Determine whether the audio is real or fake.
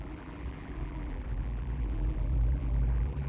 fake